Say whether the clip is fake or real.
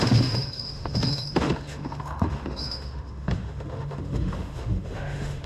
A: fake